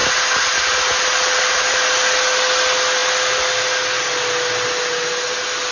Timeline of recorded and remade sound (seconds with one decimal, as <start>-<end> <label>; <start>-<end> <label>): 0.0-5.7 recorded